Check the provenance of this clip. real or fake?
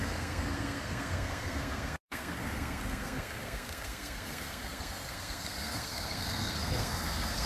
fake